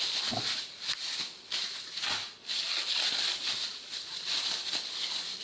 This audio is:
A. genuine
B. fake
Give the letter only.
A